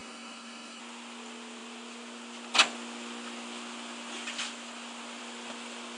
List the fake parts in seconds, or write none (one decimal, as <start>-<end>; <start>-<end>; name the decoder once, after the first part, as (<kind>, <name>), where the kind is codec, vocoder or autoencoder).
0.0-0.8 (codec, SNAC)